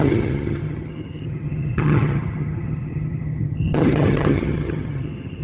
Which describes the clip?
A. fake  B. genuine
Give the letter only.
A